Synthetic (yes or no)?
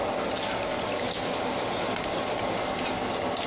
no